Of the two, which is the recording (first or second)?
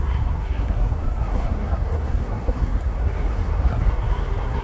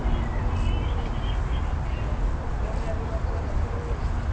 second